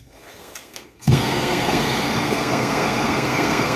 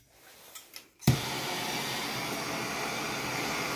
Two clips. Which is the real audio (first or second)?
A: second